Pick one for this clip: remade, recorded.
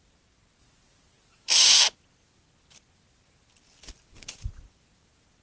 recorded